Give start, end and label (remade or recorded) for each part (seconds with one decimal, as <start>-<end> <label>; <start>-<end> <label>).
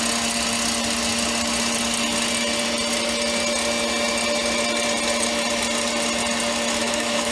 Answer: 0.0-6.8 recorded; 6.8-7.3 remade